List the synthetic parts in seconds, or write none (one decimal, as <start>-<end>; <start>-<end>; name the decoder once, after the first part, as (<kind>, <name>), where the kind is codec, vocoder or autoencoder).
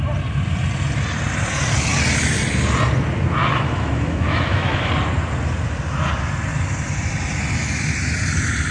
3.5-4.9 (autoencoder, DAC-VAE)